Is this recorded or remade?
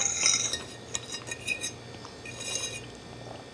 recorded